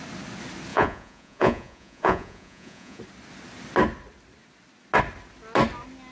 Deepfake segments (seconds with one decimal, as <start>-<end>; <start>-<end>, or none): 0.7-3.0